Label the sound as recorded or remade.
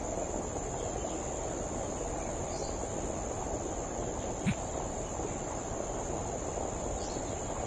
recorded